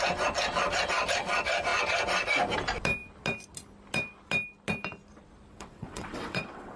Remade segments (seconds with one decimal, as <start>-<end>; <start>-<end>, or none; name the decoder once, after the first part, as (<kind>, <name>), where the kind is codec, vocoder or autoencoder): 5.5-6.8 (vocoder, WaveNeXt)